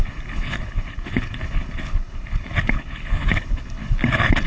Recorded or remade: remade